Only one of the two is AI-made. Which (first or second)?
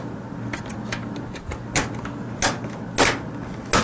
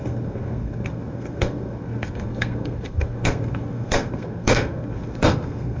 second